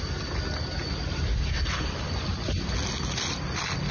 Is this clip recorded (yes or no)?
yes